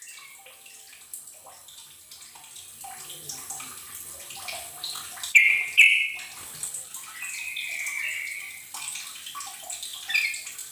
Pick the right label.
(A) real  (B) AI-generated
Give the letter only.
A